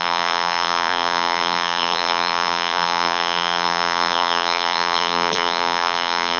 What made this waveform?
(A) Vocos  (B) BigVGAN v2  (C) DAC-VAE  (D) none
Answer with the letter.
B